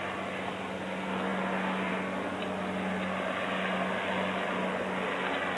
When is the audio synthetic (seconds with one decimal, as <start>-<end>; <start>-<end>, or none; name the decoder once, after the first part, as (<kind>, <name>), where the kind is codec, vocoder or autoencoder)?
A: none